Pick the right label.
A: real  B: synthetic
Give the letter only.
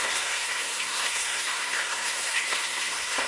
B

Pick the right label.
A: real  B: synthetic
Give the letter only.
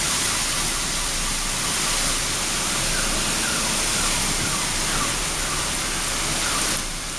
A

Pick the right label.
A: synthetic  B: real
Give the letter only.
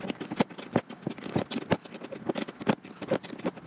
B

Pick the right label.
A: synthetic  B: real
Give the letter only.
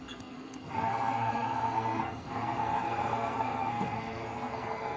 A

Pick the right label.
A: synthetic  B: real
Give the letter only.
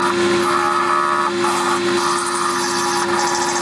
B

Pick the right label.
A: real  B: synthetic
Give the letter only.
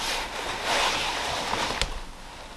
A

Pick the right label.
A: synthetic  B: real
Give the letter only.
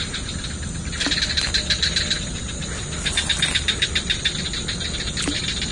B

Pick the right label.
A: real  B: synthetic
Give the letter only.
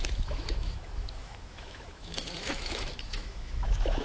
B